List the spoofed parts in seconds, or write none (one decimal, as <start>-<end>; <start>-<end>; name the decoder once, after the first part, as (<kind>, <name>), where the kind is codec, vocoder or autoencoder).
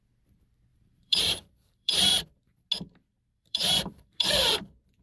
0.7-2.1 (vocoder, BigVGAN v2); 3.1-4.6